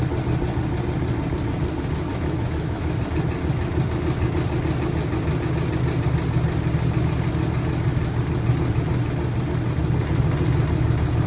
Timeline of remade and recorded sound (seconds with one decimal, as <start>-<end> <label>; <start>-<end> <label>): 0.0-2.1 recorded; 2.1-3.0 remade; 3.0-11.3 recorded

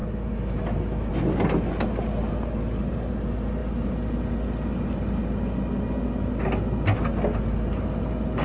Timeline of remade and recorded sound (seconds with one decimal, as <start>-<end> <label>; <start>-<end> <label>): 0.0-1.1 remade; 1.1-8.4 recorded

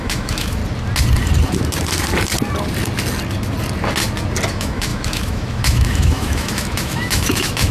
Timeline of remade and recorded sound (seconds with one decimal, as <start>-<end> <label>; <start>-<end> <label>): 0.0-0.6 remade; 0.6-4.5 recorded; 4.5-7.7 remade

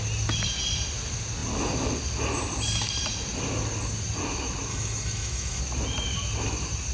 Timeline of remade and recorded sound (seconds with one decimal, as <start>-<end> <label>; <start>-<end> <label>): 0.0-4.7 recorded; 4.7-5.6 remade; 5.6-6.9 recorded

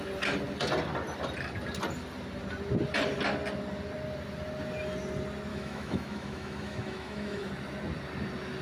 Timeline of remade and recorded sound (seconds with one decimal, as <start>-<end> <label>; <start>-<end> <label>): 0.0-5.5 recorded; 5.5-7.5 remade; 7.5-8.6 recorded

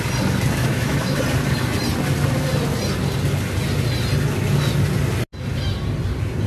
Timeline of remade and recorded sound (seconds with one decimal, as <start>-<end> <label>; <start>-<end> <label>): 0.0-0.6 recorded; 0.6-1.2 remade; 1.2-6.5 recorded

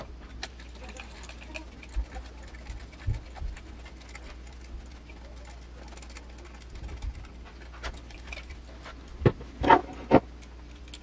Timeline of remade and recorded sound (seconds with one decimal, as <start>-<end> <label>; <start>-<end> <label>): 0.0-11.0 recorded

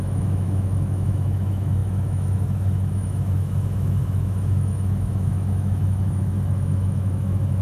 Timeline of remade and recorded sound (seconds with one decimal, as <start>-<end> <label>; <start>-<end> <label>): 0.0-7.6 remade